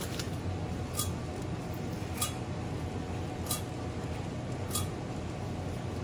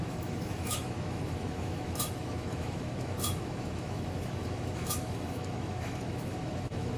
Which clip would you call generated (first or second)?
second